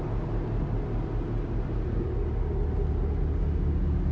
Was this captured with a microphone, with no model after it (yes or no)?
yes